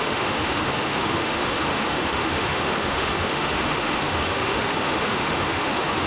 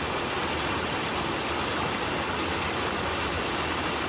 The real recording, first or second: second